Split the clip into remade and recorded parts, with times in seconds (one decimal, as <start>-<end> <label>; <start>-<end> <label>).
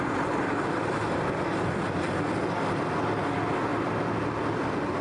0.0-5.0 recorded